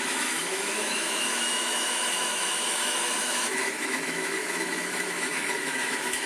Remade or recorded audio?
remade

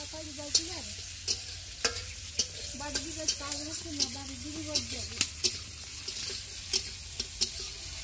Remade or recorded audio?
recorded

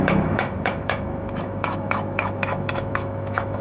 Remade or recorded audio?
remade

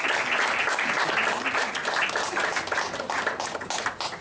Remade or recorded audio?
recorded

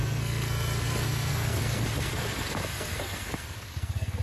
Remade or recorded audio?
remade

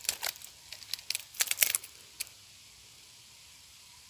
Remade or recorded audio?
recorded